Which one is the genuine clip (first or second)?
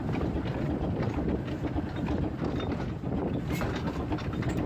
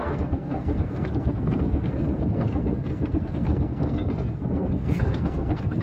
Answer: first